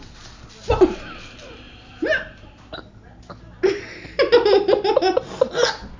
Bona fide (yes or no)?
yes